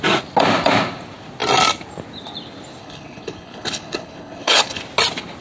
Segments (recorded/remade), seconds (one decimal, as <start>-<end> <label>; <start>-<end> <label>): 0.0-2.8 recorded; 2.8-4.8 remade; 4.8-5.4 recorded